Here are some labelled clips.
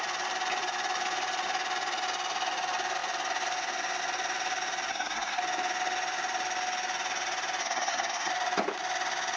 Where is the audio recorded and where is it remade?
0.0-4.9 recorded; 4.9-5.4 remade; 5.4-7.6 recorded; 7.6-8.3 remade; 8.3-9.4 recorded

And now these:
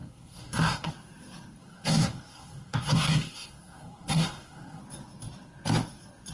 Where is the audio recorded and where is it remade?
0.0-0.9 remade; 0.9-1.6 recorded; 1.6-4.8 remade; 4.8-6.3 recorded

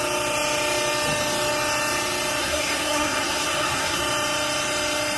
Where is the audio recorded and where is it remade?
0.0-2.4 recorded; 2.4-4.0 remade; 4.0-5.2 recorded

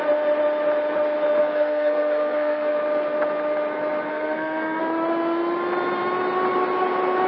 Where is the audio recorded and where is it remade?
0.0-1.4 recorded; 1.4-2.8 remade; 2.8-4.1 recorded; 4.1-4.8 remade; 4.8-7.3 recorded

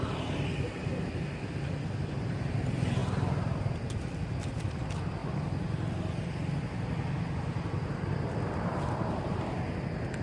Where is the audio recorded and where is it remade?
0.0-10.2 recorded

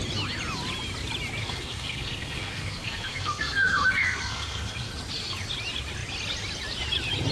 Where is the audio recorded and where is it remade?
0.0-1.4 recorded; 1.4-4.9 remade; 4.9-7.3 recorded

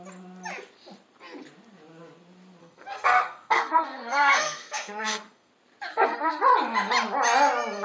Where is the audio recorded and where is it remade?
0.0-2.6 recorded; 2.6-5.5 remade; 5.5-5.9 recorded; 5.9-6.4 remade; 6.4-7.8 recorded